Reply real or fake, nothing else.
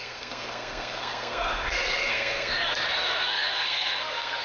fake